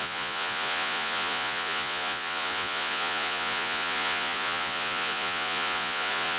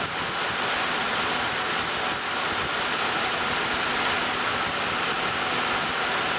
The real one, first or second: second